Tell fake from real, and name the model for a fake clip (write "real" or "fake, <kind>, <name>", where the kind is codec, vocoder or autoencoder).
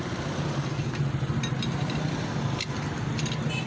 real